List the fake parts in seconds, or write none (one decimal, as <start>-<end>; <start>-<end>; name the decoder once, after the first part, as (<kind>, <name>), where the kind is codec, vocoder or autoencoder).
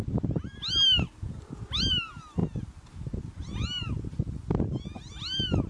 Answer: none